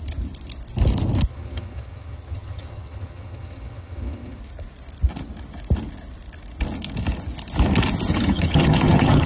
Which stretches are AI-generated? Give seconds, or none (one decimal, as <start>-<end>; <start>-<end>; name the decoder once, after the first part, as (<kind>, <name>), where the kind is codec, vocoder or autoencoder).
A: 1.3-4.4 (vocoder, HiFi-GAN); 8.1-9.3